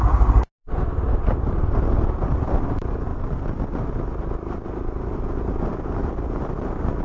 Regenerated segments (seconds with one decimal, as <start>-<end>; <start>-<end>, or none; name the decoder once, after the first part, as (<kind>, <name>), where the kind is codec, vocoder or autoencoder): none